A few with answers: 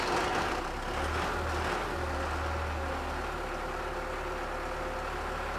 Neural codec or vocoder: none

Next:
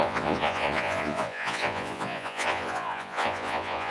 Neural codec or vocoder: vocoder, Vocos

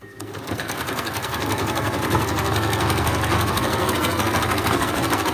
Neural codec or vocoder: codec, SNAC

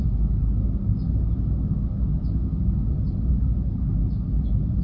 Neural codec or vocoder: none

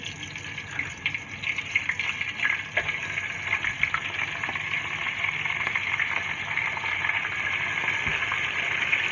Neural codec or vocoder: none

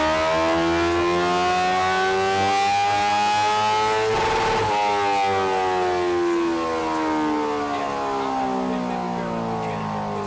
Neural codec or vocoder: none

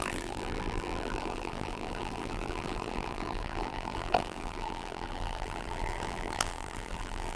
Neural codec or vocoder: vocoder, BigVGAN v2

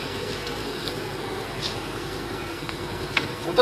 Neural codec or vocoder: codec, SNAC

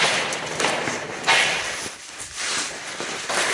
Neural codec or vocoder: vocoder, BigVGAN v2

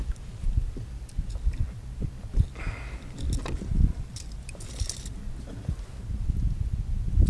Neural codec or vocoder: none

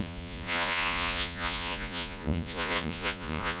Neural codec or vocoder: vocoder, Vocos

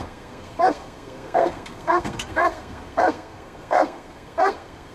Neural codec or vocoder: codec, SNAC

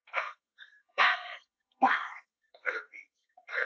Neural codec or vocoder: codec, SNAC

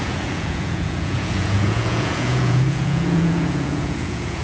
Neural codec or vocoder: vocoder, Vocos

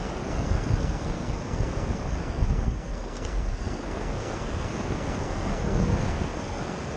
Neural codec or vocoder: codec, SNAC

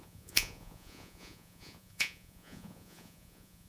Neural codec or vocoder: vocoder, Vocos